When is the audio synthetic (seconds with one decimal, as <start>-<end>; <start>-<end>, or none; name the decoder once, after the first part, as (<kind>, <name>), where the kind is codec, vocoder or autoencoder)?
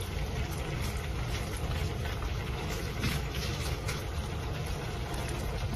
2.3-4.0 (autoencoder, DAC-VAE)